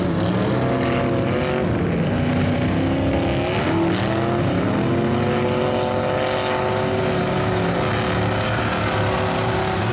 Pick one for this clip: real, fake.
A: real